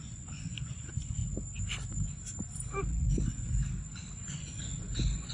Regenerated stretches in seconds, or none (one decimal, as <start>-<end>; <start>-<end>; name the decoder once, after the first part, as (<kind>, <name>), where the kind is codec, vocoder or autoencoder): 0.0-1.2 (vocoder, Vocos); 2.8-3.6; 4.3-5.3